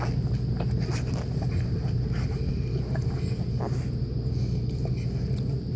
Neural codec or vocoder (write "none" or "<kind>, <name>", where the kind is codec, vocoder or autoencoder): none